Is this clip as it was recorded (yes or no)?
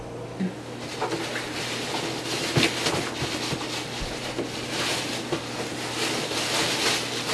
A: yes